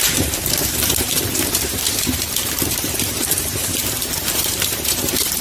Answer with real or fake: fake